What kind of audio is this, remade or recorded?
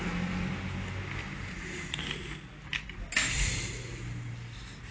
recorded